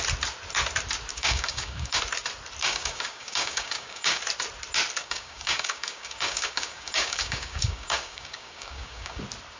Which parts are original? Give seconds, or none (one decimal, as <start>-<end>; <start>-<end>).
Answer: 0.0-1.1; 2.0-2.6; 4.2-5.0; 9.2-9.6

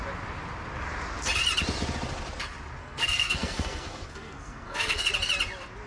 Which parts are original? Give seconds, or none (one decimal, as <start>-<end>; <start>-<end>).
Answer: 0.0-2.8; 5.1-5.9